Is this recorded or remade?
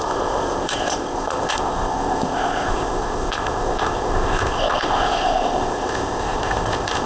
remade